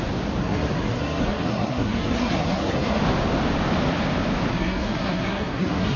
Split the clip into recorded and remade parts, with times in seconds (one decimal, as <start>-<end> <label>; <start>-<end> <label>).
0.0-0.4 recorded; 0.4-3.0 remade; 3.0-4.5 recorded; 4.5-6.0 remade